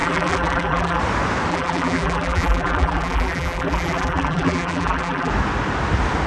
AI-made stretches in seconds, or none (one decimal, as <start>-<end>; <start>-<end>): 0.0-1.0; 1.5-5.3